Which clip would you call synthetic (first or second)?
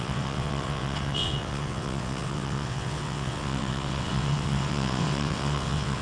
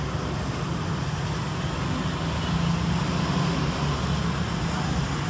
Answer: first